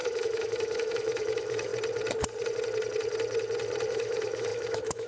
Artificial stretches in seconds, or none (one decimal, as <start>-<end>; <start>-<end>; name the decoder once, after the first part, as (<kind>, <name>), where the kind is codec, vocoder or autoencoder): 0.0-1.7 (autoencoder, DAC-VAE); 3.9-5.1